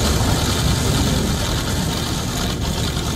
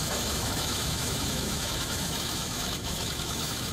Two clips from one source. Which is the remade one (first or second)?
second